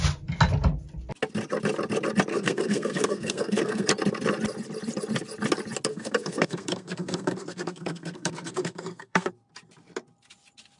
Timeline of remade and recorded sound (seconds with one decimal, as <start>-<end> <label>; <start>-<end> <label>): 0.0-2.3 recorded; 2.3-3.9 remade; 3.9-5.9 recorded; 5.9-9.3 remade; 9.3-10.8 recorded